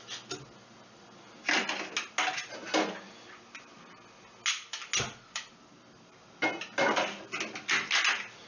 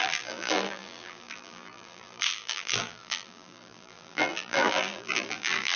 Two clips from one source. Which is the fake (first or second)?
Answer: second